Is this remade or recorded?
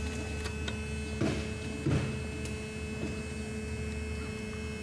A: recorded